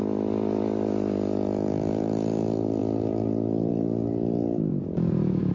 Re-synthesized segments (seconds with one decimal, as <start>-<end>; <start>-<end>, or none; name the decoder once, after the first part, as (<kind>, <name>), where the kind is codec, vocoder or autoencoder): 4.7-5.5 (vocoder, Vocos)